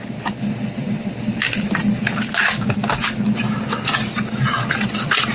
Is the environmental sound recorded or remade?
recorded